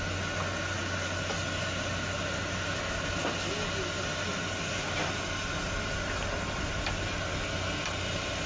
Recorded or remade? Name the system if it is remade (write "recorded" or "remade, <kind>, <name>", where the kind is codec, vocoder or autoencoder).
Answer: recorded